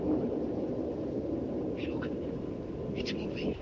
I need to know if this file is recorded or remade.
recorded